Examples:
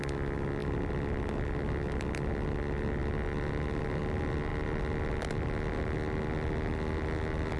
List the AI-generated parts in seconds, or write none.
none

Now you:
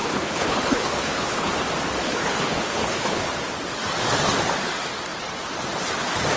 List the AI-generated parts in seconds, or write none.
0.0-1.5 (codec, HILCodec); 2.0-3.3

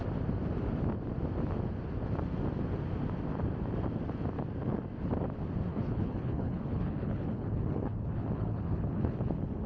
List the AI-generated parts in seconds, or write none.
5.7-9.7 (codec, HILCodec)

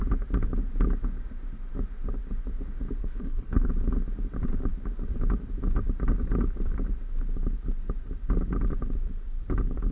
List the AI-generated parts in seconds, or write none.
3.0-3.7 (codec, HILCodec)